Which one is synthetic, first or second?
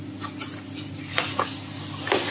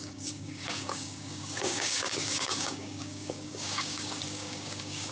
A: second